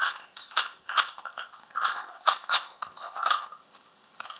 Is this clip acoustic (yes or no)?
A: no